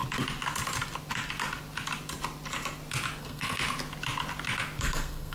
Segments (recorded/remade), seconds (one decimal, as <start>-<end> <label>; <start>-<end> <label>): 0.0-3.2 recorded; 3.2-3.6 remade; 3.6-4.8 recorded; 4.8-5.3 remade

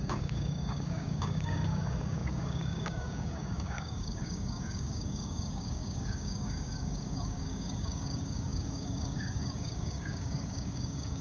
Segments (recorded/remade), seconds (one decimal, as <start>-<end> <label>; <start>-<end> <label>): 0.0-11.2 remade

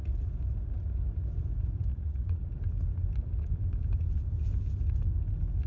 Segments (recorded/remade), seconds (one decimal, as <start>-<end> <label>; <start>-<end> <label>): 0.0-1.9 recorded; 1.9-2.5 remade; 2.5-5.7 recorded

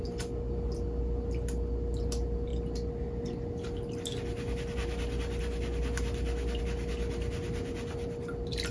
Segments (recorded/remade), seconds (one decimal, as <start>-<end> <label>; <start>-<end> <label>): 0.0-8.7 recorded